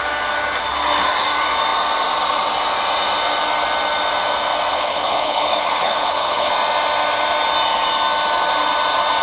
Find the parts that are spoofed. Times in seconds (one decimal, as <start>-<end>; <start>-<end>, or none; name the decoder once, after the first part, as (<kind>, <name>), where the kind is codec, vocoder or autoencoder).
4.7-6.5 (codec, HILCodec)